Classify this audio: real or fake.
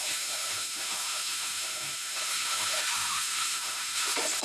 fake